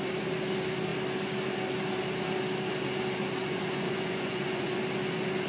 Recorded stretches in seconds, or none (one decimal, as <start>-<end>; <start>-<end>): 0.0-3.4; 4.8-5.5